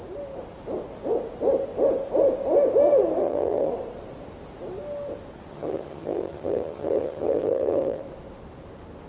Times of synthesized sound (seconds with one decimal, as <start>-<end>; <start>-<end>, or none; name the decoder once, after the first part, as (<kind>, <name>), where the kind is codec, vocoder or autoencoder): 3.2-3.7 (vocoder, HiFi-GAN); 5.5-8.0